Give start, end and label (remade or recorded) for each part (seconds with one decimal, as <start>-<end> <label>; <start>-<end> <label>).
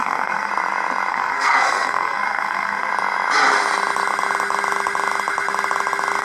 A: 0.0-0.5 remade; 0.5-1.1 recorded; 1.1-2.9 remade; 2.9-6.2 recorded